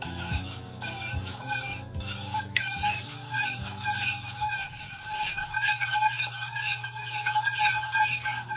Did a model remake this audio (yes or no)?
yes